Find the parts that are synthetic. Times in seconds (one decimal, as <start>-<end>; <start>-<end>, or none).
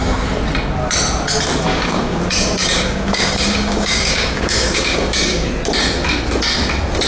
1.7-2.2; 2.6-5.5